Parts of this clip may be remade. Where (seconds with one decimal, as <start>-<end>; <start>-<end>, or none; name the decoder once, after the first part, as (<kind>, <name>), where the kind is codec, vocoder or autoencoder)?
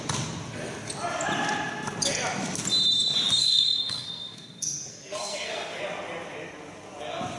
3.4-5.8 (codec, SNAC)